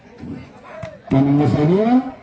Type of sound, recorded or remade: remade